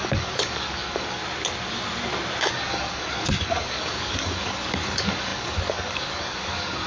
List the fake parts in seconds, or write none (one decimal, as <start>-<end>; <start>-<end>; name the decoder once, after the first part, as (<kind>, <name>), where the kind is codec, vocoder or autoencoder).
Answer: 0.0-1.2 (codec, DAC); 2.5-6.9